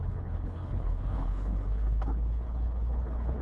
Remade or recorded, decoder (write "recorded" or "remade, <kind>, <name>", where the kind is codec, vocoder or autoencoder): remade, codec, HILCodec